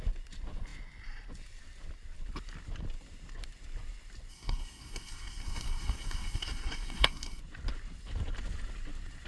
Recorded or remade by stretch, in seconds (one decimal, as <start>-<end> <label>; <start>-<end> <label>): 0.0-4.3 recorded; 4.3-7.4 remade; 7.4-9.3 recorded